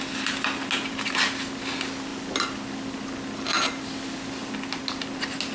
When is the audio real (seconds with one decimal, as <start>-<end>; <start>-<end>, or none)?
0.0-5.5